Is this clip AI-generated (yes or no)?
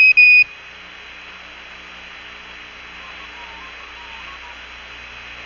no